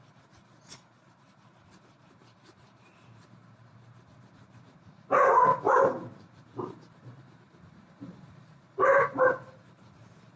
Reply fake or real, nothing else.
fake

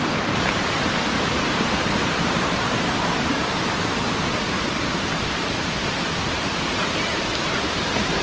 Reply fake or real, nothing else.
fake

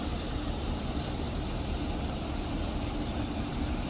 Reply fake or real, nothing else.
real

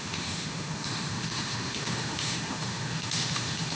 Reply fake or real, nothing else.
fake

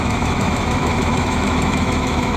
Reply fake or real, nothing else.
fake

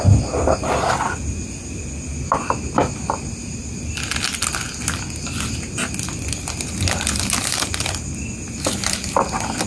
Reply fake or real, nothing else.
real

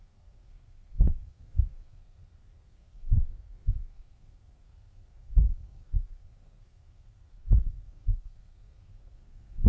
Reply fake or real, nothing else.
fake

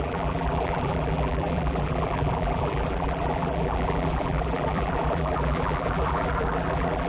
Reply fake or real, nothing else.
fake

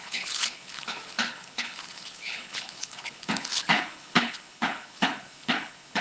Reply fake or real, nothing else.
fake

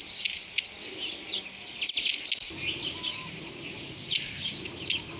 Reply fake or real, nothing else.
real